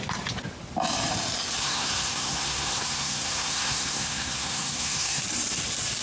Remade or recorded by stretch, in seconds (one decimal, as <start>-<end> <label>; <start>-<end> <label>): 0.0-1.6 recorded; 1.6-5.2 remade; 5.2-6.0 recorded